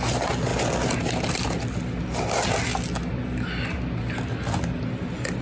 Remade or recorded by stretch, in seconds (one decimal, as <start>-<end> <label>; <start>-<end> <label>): 0.0-5.4 recorded